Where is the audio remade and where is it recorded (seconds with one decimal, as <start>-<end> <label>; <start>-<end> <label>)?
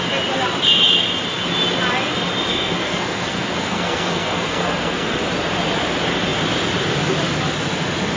0.0-2.5 recorded; 2.5-5.2 remade; 5.2-8.2 recorded